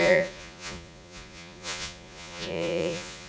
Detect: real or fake fake